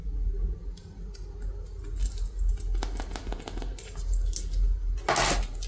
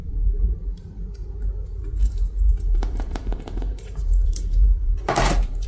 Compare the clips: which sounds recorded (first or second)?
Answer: first